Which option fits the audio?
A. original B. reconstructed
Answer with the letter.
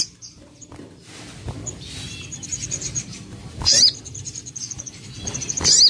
A